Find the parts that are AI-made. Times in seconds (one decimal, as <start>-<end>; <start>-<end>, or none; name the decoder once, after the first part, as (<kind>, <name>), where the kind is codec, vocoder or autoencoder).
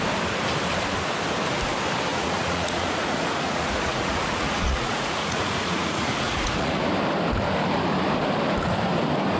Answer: 2.1-6.8 (vocoder, Vocos)